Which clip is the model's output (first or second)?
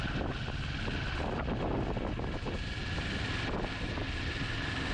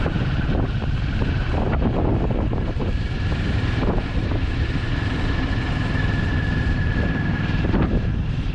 second